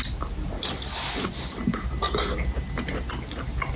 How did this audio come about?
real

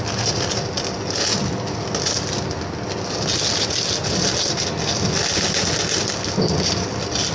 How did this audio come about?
real